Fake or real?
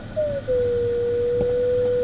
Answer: real